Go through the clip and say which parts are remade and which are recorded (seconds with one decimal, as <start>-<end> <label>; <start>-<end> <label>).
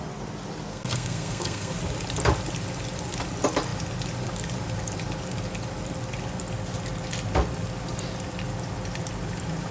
0.0-0.7 recorded; 0.7-1.8 remade; 1.8-9.7 recorded